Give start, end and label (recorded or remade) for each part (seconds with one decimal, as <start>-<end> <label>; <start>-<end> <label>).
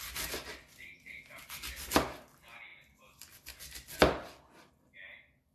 0.0-5.5 recorded